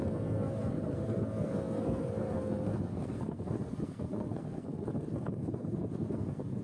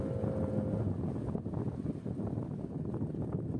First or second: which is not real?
first